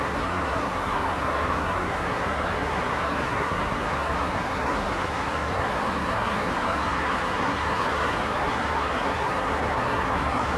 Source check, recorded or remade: remade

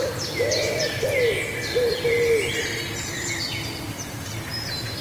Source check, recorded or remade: recorded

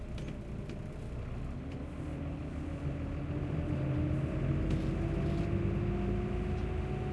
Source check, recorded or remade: recorded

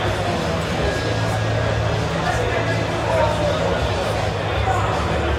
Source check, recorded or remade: recorded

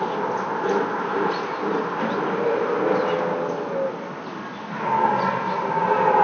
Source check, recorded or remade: recorded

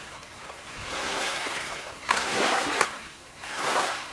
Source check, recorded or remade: remade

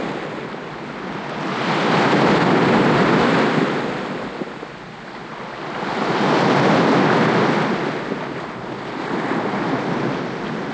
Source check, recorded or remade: recorded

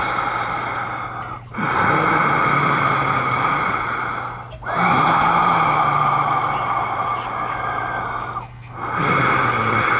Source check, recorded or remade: recorded